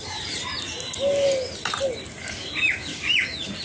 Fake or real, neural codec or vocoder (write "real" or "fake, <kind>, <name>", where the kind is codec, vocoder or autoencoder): real